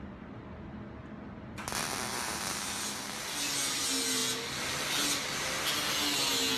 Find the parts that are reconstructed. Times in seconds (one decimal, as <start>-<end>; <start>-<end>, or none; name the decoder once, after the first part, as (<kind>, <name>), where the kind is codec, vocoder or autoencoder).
2.1-3.8 (vocoder, BigVGAN v2)